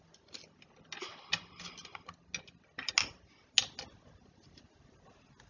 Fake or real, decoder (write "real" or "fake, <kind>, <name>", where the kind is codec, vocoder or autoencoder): real